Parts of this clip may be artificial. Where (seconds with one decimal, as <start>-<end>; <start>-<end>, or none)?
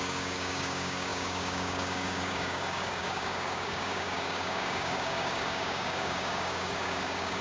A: 0.0-7.4